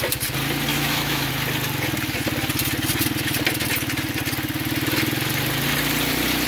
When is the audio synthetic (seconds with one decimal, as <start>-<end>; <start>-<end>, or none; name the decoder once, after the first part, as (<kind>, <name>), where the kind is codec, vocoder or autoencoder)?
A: 0.7-1.3 (autoencoder, DAC-VAE)